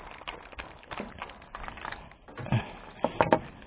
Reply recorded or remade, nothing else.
recorded